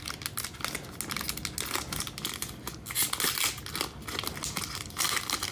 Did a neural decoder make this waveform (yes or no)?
no